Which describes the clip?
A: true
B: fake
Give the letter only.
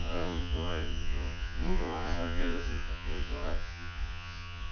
B